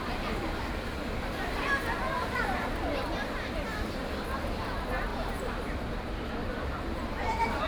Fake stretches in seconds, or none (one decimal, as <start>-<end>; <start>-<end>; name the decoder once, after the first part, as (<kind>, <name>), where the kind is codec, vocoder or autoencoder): 0.0-7.7 (vocoder, BigVGAN v2)